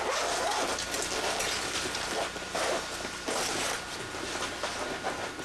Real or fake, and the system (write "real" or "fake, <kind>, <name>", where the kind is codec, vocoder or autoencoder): real